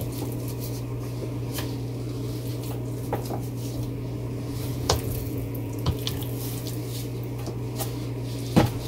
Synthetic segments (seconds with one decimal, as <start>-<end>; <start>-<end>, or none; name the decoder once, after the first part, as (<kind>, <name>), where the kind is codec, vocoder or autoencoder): 4.7-5.9 (vocoder, Vocos)